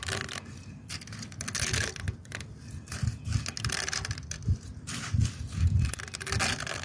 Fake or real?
real